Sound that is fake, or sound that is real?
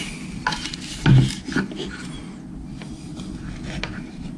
real